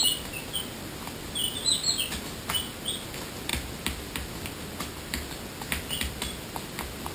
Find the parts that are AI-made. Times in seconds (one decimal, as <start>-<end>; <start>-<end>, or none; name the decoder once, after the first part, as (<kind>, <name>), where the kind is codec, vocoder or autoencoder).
none